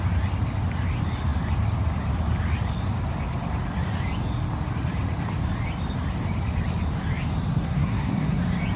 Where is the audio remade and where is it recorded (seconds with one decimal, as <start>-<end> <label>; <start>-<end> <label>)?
0.0-7.5 recorded; 7.5-8.4 remade; 8.4-8.8 recorded